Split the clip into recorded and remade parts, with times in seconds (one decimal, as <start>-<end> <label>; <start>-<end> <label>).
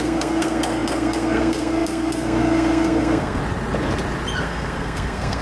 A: 0.0-3.4 remade; 3.4-4.4 recorded; 4.4-5.4 remade